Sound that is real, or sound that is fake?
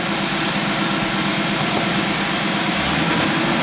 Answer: real